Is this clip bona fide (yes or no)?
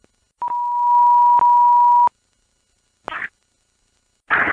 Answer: yes